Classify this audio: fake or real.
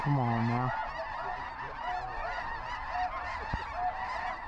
real